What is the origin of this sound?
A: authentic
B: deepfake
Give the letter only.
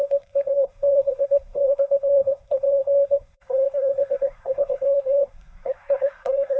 B